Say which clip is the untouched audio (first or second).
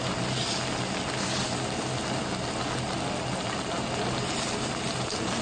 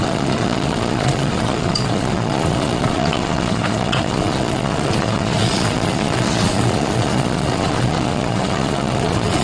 first